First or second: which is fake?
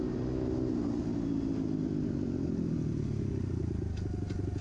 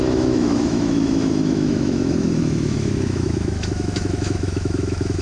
second